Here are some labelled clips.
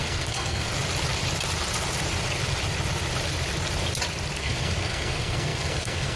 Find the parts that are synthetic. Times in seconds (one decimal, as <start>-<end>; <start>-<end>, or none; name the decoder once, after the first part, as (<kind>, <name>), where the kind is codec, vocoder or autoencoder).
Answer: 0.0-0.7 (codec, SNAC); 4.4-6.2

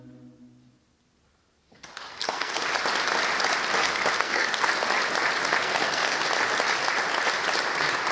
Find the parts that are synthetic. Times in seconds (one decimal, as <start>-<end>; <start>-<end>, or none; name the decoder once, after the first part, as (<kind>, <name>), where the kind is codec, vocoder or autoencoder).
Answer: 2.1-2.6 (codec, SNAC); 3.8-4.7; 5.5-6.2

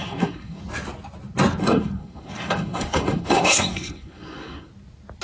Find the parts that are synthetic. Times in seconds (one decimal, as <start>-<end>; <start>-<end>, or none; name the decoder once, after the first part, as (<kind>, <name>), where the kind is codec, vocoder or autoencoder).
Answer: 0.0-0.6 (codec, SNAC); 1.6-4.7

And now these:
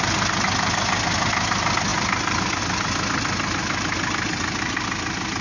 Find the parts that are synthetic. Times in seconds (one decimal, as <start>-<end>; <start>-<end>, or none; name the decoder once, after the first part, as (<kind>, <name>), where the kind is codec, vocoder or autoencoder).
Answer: none